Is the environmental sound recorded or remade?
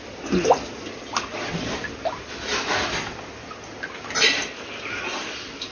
recorded